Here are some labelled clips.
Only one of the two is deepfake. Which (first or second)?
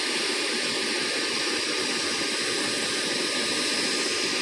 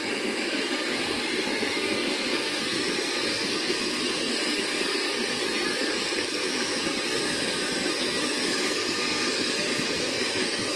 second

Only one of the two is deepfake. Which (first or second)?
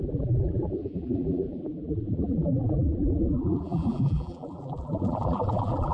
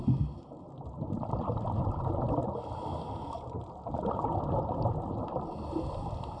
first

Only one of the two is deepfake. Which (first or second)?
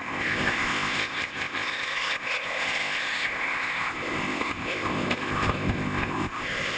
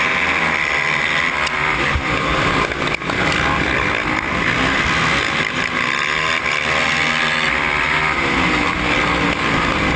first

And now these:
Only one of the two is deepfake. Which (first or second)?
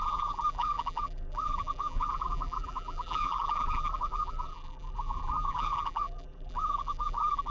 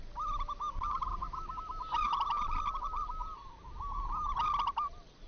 first